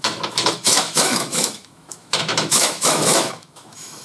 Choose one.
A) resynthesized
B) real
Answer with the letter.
A